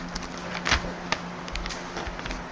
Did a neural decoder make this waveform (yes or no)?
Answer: no